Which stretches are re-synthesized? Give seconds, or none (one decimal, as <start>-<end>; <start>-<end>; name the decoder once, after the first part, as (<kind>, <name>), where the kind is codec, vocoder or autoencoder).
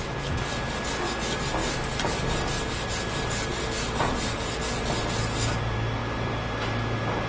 none